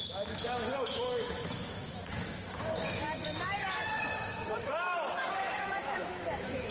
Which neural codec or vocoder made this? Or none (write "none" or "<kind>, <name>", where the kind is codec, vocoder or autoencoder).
autoencoder, DAC-VAE